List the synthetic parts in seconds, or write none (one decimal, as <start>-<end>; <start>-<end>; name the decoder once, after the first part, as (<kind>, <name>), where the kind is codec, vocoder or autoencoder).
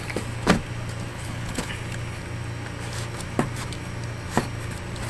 1.1-1.7 (codec, HILCodec)